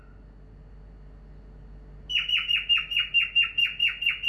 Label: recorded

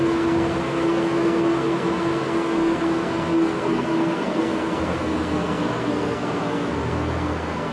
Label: remade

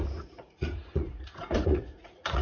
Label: remade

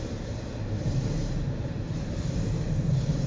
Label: recorded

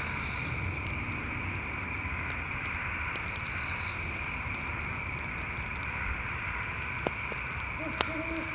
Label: recorded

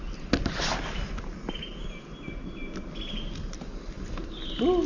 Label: recorded